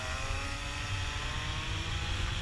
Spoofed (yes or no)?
yes